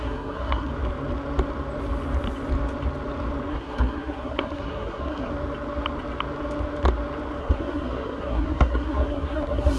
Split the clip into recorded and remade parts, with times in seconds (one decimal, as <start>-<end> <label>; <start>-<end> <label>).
0.0-0.7 remade; 0.7-3.5 recorded; 3.5-5.3 remade; 5.3-7.4 recorded; 7.4-9.8 remade